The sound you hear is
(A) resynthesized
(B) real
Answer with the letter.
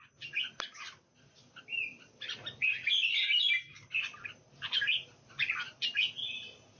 B